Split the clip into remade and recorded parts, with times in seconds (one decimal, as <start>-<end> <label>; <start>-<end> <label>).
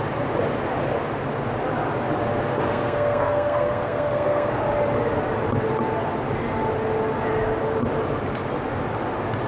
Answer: 0.0-2.7 recorded; 2.7-4.5 remade; 4.5-9.5 recorded